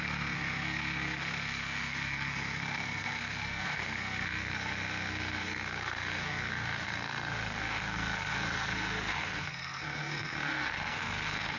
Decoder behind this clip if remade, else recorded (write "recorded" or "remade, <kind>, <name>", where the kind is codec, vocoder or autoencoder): remade, codec, SNAC